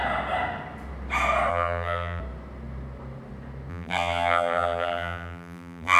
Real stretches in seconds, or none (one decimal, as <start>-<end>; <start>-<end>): 0.0-1.5; 2.2-3.7